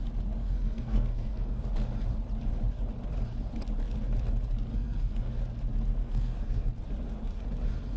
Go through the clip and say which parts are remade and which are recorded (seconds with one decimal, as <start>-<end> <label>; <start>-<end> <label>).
0.0-0.4 recorded; 0.4-1.6 remade; 1.6-4.7 recorded; 4.7-5.4 remade; 5.4-6.0 recorded; 6.0-6.7 remade; 6.7-8.0 recorded